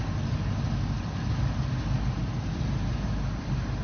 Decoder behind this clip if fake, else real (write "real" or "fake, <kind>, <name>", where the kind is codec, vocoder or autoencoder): real